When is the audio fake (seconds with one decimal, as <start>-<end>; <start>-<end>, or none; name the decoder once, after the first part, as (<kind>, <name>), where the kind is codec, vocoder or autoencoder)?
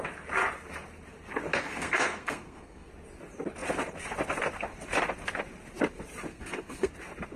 1.6-2.9 (codec, SNAC); 6.3-6.9